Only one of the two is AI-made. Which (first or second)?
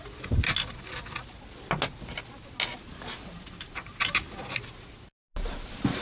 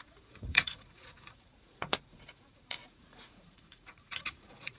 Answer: second